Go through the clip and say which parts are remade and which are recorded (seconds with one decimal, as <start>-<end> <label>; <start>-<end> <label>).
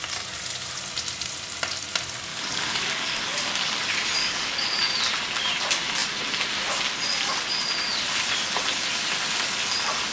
0.0-2.3 recorded; 2.3-3.8 remade; 3.8-4.2 recorded; 4.2-4.8 remade; 4.8-10.1 recorded